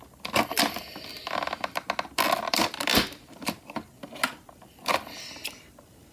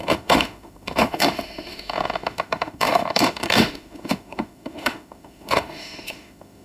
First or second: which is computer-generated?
second